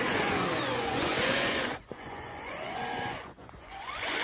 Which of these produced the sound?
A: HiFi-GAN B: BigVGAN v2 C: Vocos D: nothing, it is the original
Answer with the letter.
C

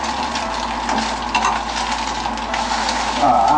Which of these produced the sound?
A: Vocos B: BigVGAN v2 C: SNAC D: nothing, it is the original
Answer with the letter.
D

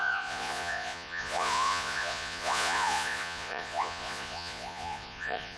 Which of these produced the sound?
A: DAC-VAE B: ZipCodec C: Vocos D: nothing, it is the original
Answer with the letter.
C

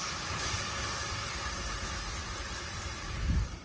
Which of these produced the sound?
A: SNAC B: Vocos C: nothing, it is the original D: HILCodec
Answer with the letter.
C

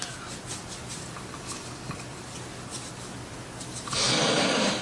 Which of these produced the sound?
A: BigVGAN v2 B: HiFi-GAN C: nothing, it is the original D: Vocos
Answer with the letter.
C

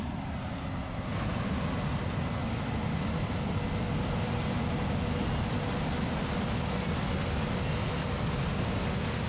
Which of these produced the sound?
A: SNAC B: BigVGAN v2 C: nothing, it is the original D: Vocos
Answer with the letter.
C